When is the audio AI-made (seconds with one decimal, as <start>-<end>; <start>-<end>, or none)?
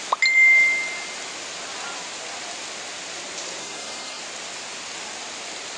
3.6-4.2